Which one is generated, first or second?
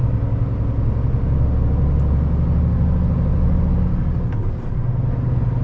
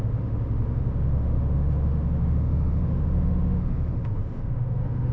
second